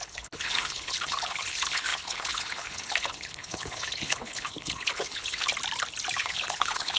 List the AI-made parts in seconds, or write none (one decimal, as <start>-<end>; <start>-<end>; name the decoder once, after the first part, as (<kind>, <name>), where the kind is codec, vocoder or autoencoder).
0.0-5.5 (codec, HILCodec); 6.2-7.0